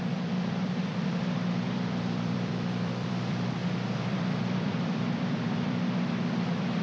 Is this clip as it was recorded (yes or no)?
no